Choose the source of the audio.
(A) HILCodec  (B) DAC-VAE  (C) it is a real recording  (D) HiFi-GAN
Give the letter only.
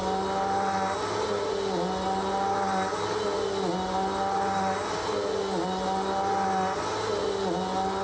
C